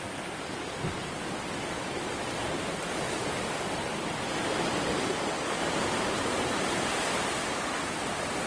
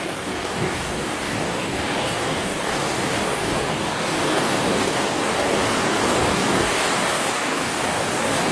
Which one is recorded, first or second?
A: first